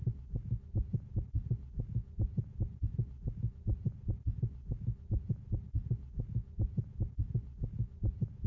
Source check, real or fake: real